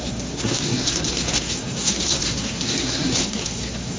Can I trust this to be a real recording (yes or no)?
no